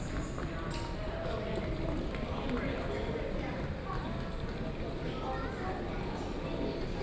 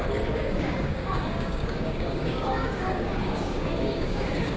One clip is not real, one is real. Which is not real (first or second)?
second